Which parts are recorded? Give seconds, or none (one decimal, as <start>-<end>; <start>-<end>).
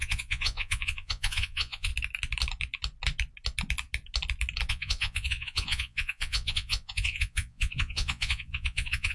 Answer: 1.9-4.7